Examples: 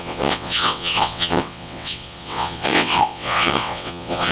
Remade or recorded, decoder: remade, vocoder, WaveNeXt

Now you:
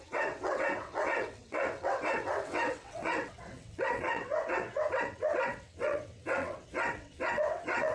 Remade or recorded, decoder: remade, vocoder, WaveNeXt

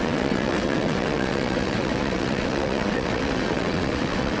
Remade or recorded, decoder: remade, vocoder, WaveNeXt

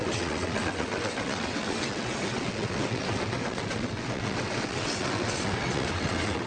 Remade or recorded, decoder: remade, vocoder, WaveNeXt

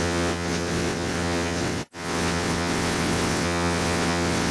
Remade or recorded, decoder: remade, vocoder, WaveNeXt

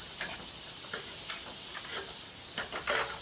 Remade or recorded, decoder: recorded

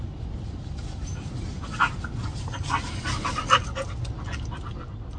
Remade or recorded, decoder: recorded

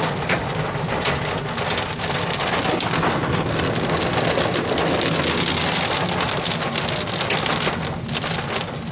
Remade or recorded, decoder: recorded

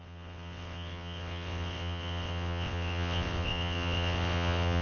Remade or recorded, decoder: remade, vocoder, WaveNeXt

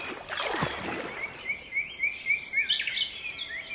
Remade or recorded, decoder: recorded